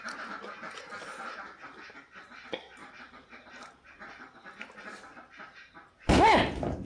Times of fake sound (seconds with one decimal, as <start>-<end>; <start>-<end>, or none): 2.8-6.9